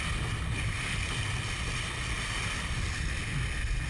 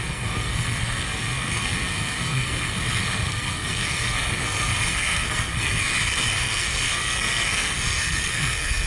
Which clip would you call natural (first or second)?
first